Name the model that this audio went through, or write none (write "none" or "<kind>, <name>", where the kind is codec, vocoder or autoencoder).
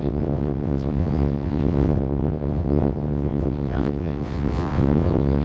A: vocoder, WaveNeXt